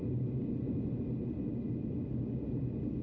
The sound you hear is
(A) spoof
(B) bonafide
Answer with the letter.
B